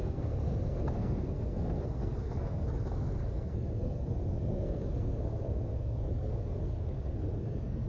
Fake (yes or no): yes